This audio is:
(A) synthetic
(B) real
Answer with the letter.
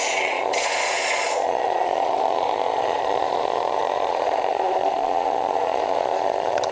A